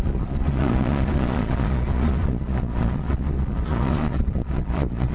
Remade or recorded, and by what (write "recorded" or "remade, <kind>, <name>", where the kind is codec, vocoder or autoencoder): remade, vocoder, Vocos